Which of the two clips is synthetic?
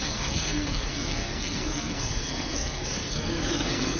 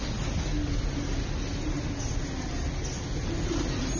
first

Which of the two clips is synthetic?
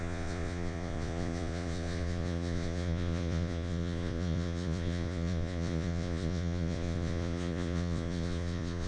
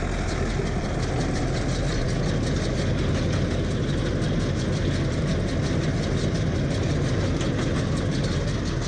first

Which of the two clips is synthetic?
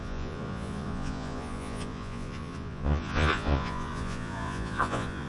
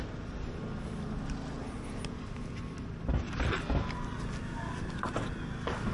first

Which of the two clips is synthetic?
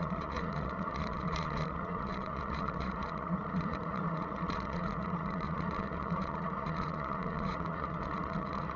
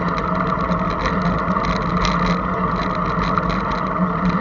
first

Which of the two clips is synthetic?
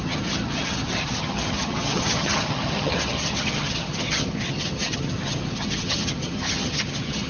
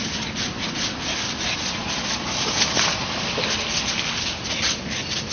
first